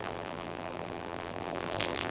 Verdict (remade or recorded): remade